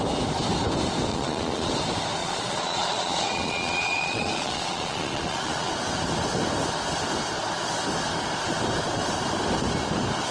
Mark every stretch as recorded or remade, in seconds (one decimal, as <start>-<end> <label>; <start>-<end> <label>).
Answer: 0.0-1.1 recorded; 1.1-1.7 remade; 1.7-2.2 recorded; 2.2-5.7 remade; 5.7-10.3 recorded